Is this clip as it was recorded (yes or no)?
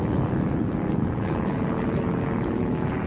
yes